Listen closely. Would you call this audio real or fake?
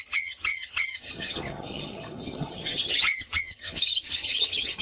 fake